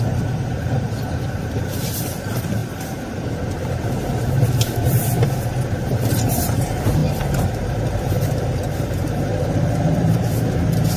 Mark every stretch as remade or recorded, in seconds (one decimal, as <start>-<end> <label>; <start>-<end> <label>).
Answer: 0.0-2.6 remade; 2.6-3.2 recorded; 3.2-11.0 remade